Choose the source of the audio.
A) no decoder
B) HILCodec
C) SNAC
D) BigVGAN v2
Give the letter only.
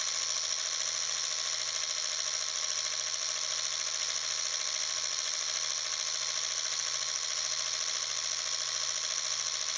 A